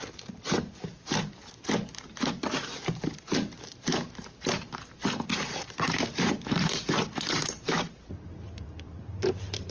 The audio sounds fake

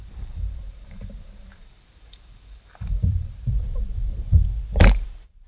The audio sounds fake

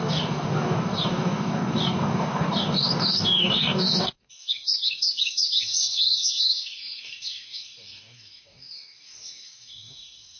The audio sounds fake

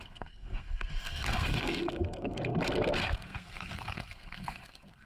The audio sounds fake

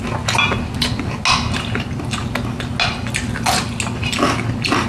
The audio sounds real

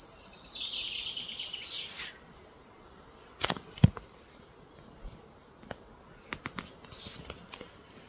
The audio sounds real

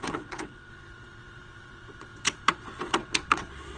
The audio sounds fake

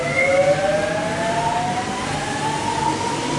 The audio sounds real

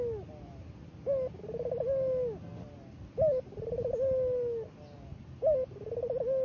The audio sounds real